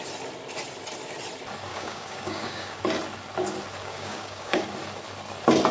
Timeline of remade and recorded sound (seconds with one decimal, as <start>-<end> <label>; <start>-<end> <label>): 0.0-1.7 recorded; 1.7-2.8 remade; 2.8-3.8 recorded; 3.8-4.6 remade; 4.6-5.7 recorded